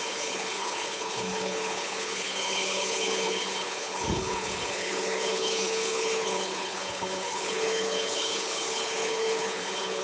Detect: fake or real fake